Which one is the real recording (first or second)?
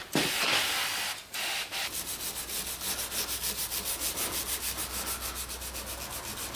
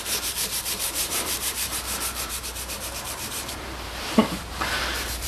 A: first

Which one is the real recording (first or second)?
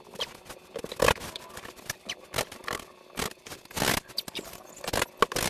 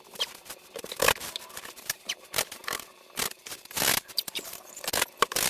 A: first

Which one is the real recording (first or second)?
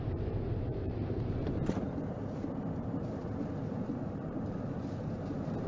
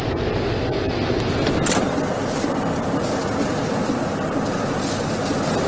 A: second